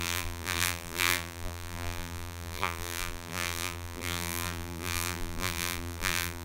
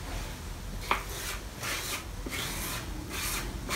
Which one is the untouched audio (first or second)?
second